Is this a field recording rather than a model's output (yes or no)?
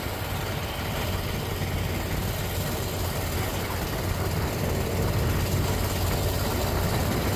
yes